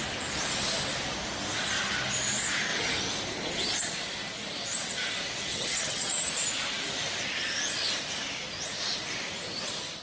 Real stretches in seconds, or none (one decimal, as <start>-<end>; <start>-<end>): 0.0-5.5; 6.1-10.0

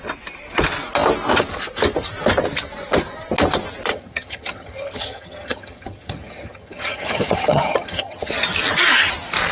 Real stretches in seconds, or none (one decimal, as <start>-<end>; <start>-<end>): 0.0-3.9; 8.3-9.5

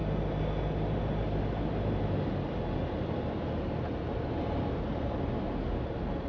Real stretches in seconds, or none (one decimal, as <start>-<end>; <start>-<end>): 0.0-6.3

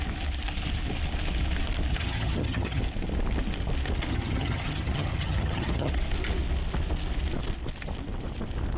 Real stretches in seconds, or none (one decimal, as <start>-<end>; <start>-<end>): 0.0-1.9; 2.8-4.1; 5.9-8.8

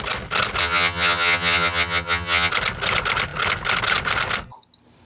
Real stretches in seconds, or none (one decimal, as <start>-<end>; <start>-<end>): 0.0-0.6; 2.5-5.0